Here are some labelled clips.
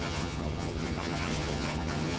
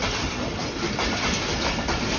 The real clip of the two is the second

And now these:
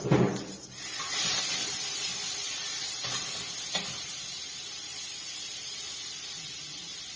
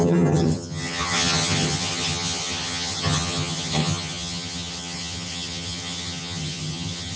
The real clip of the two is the first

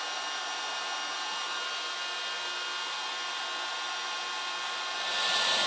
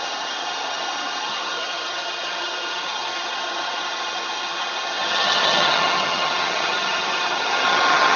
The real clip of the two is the first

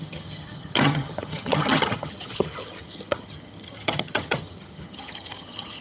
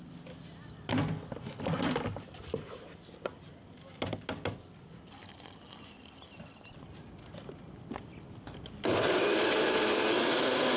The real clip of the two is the second